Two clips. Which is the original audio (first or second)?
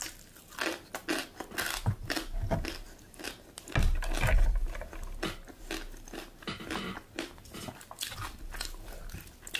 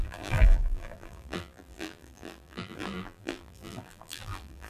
first